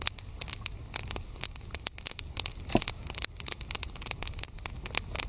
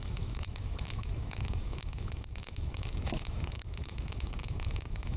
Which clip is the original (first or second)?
first